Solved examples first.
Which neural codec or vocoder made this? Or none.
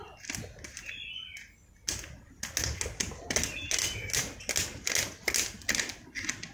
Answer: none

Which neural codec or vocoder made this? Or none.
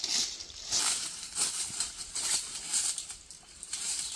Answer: vocoder, BigVGAN v2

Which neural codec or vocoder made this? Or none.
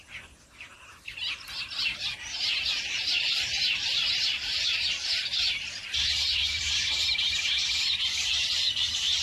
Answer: vocoder, BigVGAN v2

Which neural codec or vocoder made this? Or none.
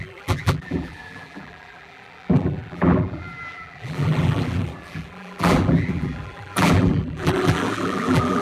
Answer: vocoder, BigVGAN v2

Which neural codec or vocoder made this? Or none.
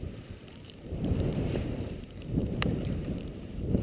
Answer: vocoder, BigVGAN v2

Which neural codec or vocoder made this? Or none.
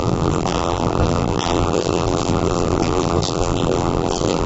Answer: vocoder, BigVGAN v2